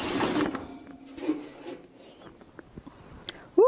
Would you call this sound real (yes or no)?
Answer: yes